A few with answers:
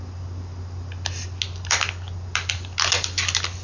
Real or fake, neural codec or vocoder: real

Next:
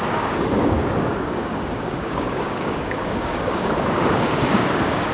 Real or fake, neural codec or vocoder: fake, codec, DAC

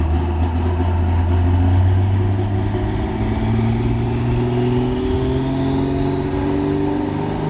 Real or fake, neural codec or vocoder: real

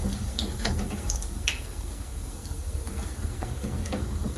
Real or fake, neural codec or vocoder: fake, codec, SNAC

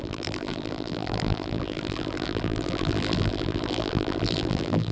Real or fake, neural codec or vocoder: fake, vocoder, BigVGAN v2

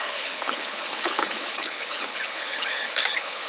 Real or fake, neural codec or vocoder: fake, codec, HILCodec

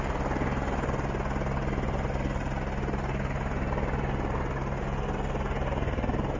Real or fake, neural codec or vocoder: real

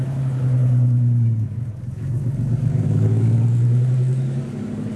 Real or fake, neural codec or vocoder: fake, codec, DAC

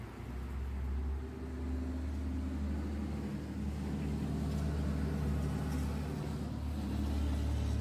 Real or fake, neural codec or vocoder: real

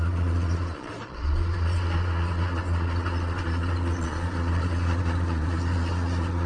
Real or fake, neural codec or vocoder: fake, vocoder, Vocos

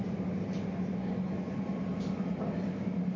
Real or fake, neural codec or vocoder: real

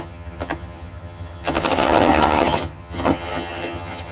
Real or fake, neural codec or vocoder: fake, vocoder, HiFi-GAN